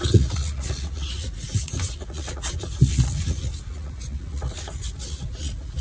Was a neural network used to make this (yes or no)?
yes